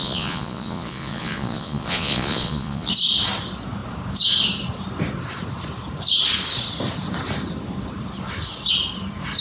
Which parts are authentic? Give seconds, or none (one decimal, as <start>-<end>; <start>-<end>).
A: 2.9-9.4